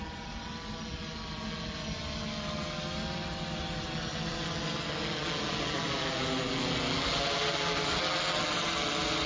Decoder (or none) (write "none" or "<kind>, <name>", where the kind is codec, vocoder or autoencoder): none